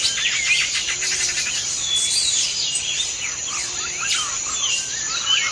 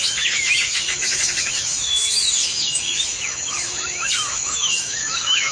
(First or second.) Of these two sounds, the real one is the first